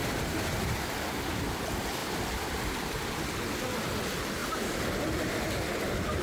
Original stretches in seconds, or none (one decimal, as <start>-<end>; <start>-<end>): 0.7-6.2